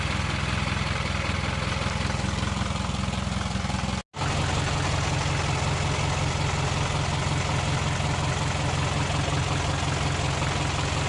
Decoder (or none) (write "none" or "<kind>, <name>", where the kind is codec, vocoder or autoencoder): none